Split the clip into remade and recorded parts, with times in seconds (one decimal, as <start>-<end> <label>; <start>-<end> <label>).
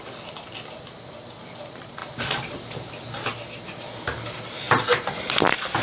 0.0-5.8 recorded